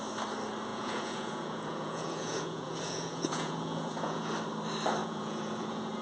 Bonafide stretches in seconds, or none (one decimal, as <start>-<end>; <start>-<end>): 0.0-0.7; 4.3-5.0